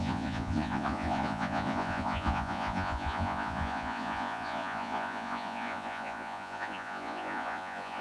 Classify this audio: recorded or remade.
remade